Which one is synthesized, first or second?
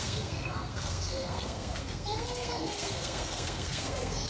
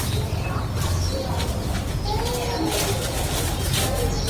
first